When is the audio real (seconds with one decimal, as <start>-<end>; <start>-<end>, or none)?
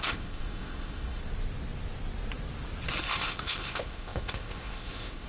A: 1.2-3.0